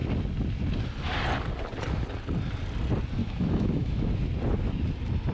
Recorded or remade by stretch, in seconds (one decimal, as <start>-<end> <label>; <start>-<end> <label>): 0.0-3.2 recorded; 3.2-4.1 remade; 4.1-5.3 recorded